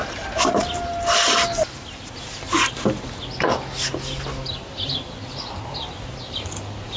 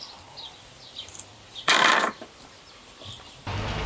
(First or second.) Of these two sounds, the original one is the first